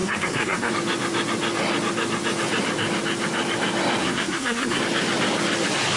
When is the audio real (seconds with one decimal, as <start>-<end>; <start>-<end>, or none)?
0.7-4.0; 4.8-6.0